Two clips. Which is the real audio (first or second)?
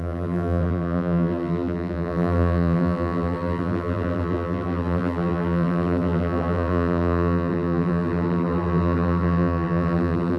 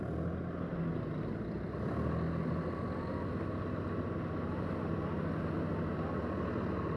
second